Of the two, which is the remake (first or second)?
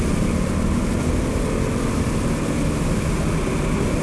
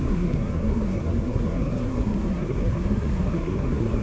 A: second